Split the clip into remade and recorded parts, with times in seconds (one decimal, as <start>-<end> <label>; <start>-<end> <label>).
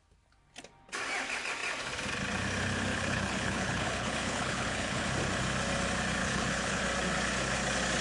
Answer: 0.0-2.9 recorded; 2.9-5.1 remade; 5.1-6.2 recorded; 6.2-6.8 remade; 6.8-8.0 recorded